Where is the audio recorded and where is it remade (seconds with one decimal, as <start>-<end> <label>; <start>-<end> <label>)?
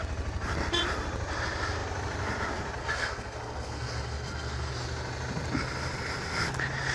0.0-2.8 recorded; 2.8-4.7 remade; 4.7-6.9 recorded